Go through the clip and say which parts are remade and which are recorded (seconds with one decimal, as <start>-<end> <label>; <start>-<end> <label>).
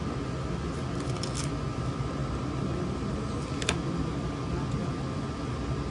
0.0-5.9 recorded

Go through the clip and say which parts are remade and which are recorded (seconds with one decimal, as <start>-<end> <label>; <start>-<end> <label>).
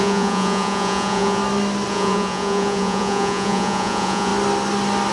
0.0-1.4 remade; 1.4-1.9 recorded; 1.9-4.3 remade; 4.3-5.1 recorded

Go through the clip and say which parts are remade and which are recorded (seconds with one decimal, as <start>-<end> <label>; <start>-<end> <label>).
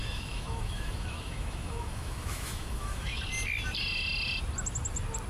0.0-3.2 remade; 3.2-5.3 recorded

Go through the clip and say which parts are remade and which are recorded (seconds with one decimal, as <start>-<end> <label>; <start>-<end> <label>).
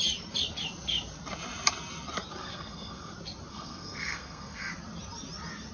0.0-2.4 recorded; 2.4-3.1 remade; 3.1-3.5 recorded; 3.5-4.7 remade; 4.7-5.7 recorded